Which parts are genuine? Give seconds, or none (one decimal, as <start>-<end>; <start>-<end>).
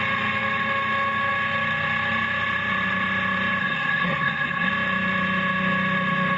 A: 0.0-3.6; 4.7-6.4